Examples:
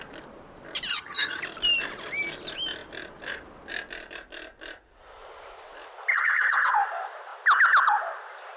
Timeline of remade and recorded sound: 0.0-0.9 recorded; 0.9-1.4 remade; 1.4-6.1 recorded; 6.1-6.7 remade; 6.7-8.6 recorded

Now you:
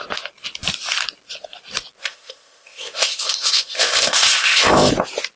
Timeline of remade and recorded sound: 0.0-2.0 recorded; 2.0-4.9 remade; 4.9-5.4 recorded

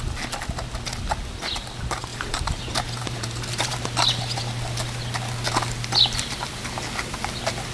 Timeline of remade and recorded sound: 0.0-2.1 recorded; 2.1-3.7 remade; 3.7-7.7 recorded

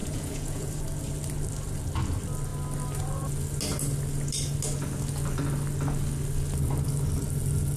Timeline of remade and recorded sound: 0.0-0.7 remade; 0.7-7.8 recorded

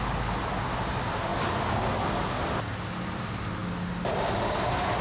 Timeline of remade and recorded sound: 0.0-5.0 recorded

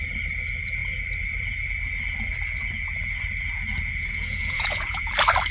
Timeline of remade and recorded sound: 0.0-3.9 recorded; 3.9-5.1 remade; 5.1-5.5 recorded